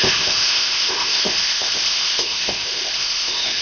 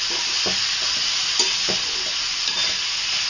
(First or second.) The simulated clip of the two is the first